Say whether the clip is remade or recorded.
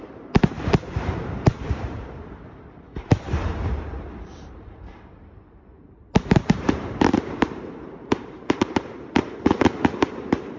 remade